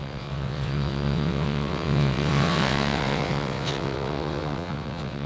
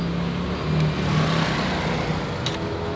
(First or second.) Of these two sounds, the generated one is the first